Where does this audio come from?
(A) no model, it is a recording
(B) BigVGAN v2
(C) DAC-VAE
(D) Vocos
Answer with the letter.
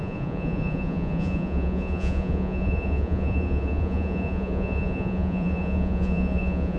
D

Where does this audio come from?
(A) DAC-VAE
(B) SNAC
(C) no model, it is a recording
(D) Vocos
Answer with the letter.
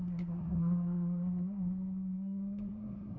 B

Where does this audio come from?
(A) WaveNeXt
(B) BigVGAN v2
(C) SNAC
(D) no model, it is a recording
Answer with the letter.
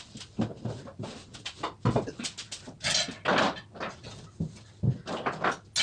D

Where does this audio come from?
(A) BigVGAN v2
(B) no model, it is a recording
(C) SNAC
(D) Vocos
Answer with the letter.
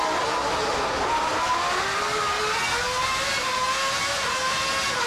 B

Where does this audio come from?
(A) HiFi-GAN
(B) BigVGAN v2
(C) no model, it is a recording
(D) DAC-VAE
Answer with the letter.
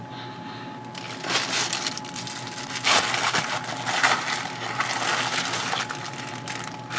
C